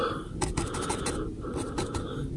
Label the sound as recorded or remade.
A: recorded